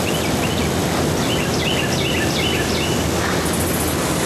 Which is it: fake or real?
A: real